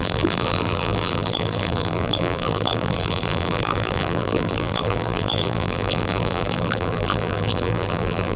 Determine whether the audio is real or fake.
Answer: fake